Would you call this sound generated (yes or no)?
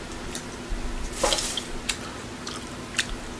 no